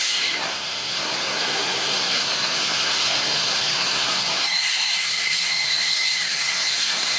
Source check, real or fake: fake